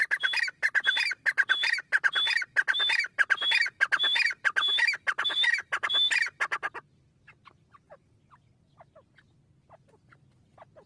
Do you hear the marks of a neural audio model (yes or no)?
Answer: no